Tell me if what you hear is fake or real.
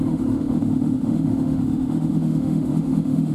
fake